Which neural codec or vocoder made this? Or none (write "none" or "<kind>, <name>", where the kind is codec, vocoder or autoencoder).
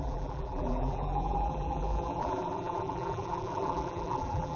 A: vocoder, BigVGAN v2